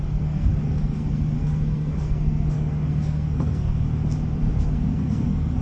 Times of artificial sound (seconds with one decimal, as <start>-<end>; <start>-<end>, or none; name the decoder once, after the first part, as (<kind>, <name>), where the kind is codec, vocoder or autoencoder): 0.0-3.9 (codec, SNAC); 4.6-5.6